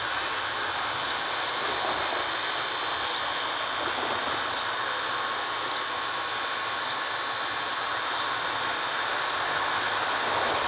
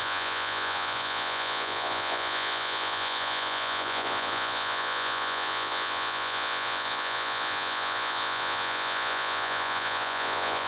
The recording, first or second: first